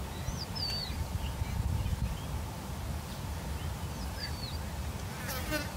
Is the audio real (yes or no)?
yes